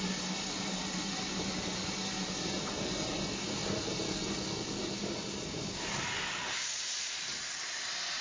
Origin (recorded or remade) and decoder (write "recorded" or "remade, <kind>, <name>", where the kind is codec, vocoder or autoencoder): recorded